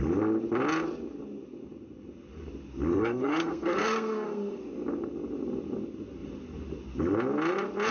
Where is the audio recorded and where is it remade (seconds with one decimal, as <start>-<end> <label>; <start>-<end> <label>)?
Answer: 0.0-2.9 recorded; 2.9-4.6 remade; 4.6-7.9 recorded